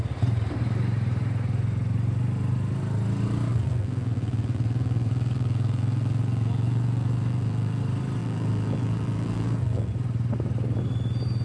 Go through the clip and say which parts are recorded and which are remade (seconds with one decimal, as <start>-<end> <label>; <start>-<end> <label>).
0.0-3.5 recorded; 3.5-7.8 remade; 7.8-8.2 recorded; 8.2-9.9 remade; 9.9-11.4 recorded